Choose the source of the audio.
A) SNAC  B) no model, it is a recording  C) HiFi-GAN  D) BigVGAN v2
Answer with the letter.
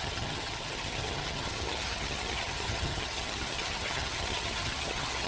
C